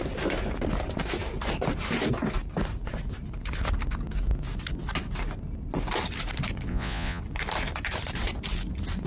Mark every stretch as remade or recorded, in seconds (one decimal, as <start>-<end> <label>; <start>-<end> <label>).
0.0-6.7 recorded; 6.7-7.2 remade; 7.2-9.1 recorded